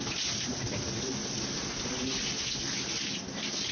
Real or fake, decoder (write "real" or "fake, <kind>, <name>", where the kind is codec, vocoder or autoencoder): real